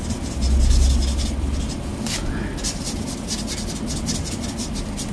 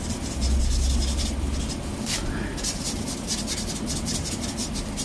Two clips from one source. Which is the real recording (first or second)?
first